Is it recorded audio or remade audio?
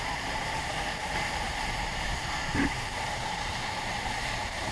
remade